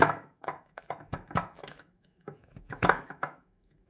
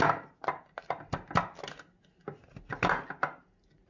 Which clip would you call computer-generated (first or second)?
first